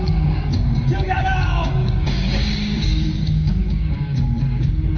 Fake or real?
fake